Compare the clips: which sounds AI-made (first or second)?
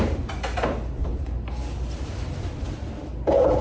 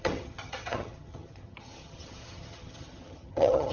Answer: second